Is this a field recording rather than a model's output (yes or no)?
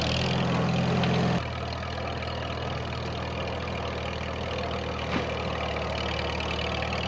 yes